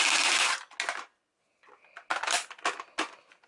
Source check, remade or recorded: recorded